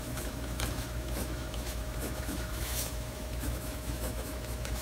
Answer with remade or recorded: remade